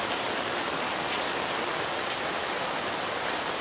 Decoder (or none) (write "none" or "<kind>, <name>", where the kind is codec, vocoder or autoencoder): none